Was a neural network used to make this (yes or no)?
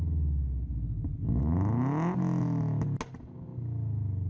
no